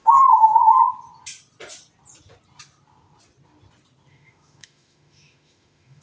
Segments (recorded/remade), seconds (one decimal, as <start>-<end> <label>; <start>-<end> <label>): 0.0-0.7 remade; 0.7-4.1 recorded; 4.1-6.0 remade